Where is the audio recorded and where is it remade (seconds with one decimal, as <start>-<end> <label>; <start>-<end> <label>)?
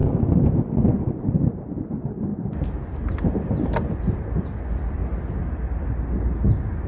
0.0-0.8 recorded; 0.8-5.0 remade; 5.0-6.2 recorded; 6.2-6.9 remade